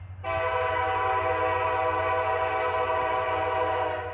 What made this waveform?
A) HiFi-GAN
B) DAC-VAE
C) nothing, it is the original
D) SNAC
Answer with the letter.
C